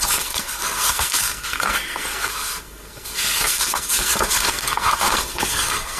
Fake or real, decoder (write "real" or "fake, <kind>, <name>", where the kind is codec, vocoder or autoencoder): fake, codec, SNAC